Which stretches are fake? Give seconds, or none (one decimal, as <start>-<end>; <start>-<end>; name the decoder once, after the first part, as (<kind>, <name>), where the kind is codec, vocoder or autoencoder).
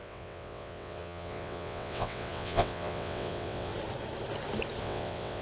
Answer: 0.0-3.7 (vocoder, WaveNeXt); 4.8-5.4